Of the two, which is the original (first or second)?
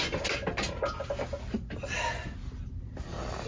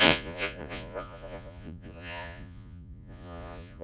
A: first